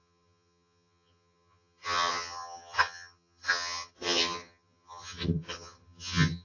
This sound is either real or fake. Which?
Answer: fake